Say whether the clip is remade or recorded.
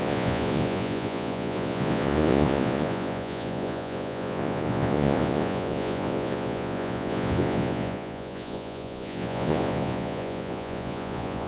remade